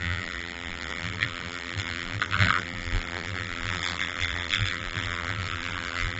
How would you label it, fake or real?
fake